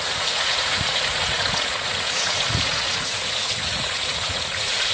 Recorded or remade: remade